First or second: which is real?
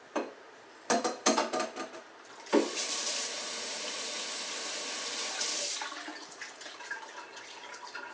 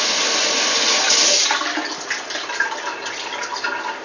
second